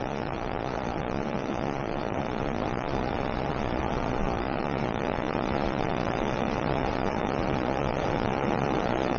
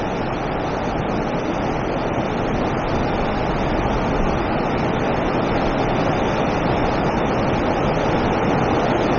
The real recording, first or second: second